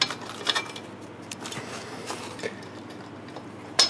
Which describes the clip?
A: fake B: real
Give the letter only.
B